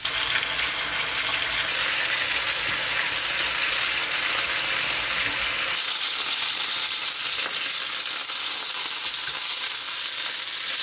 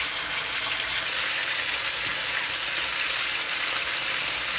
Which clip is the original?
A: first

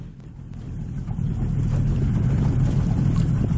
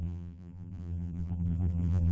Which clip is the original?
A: first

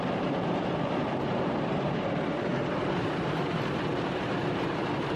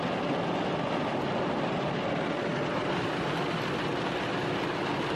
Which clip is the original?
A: second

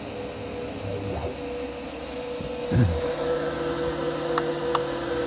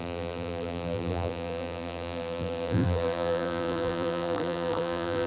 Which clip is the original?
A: first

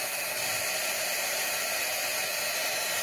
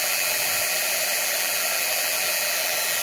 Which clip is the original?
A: first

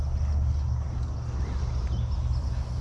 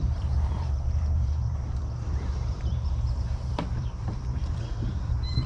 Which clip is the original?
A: first